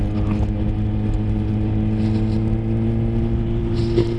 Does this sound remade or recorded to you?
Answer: recorded